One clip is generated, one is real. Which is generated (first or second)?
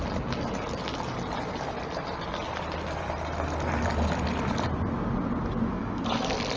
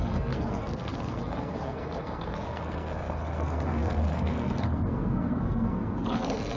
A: second